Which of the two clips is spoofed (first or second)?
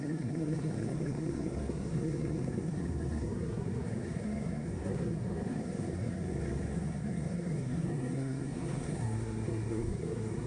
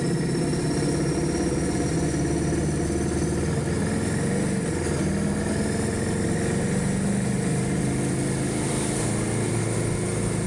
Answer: first